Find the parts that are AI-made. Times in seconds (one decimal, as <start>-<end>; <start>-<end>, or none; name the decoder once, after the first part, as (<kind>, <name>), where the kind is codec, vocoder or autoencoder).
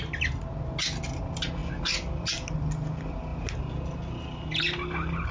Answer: none